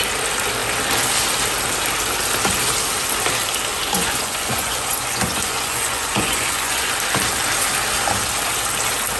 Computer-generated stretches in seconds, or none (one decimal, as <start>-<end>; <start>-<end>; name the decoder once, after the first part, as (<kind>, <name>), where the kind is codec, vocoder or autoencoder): 3.7-6.9 (vocoder, Vocos)